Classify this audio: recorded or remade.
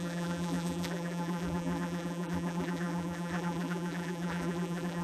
remade